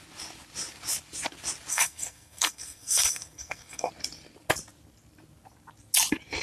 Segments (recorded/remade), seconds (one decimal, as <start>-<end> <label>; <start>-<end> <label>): 0.0-1.7 recorded; 1.7-3.9 remade; 3.9-6.4 recorded